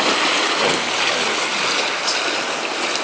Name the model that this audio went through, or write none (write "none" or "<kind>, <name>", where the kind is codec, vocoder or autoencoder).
none